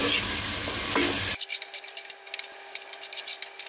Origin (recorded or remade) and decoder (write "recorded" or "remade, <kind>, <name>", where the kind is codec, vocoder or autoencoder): recorded